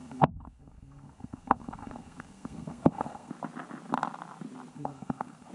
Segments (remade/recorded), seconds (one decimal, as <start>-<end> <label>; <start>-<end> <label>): 0.0-3.3 remade; 3.3-4.7 recorded; 4.7-5.5 remade